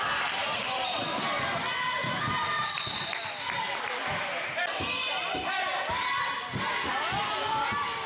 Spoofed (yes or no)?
no